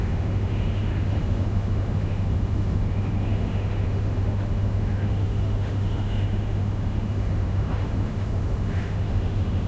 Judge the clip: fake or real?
fake